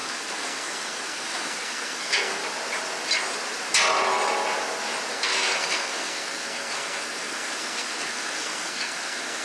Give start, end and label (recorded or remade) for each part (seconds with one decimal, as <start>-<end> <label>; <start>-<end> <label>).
0.0-2.4 remade; 2.4-5.1 recorded; 5.1-9.4 remade